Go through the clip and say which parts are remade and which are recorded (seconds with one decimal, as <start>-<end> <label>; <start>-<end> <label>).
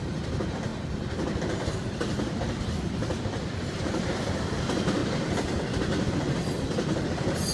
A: 0.0-0.7 remade; 0.7-1.9 recorded; 1.9-5.0 remade; 5.0-6.3 recorded; 6.3-7.5 remade